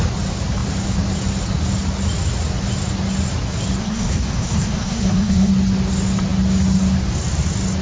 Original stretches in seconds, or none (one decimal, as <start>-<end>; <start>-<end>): 0.0-3.8; 5.5-7.8